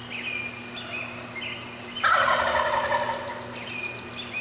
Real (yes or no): yes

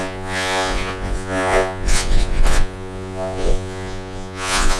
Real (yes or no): no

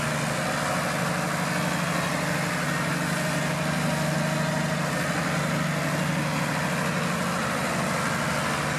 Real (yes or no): yes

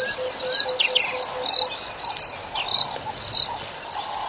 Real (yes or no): yes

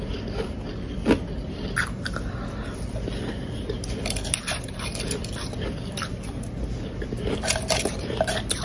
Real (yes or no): yes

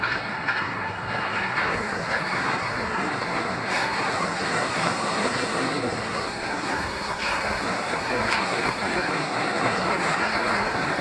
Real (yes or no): no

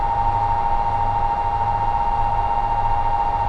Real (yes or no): yes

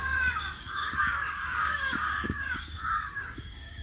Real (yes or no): no